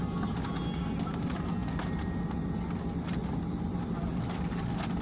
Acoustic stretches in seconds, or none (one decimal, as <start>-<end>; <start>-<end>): 0.0-5.0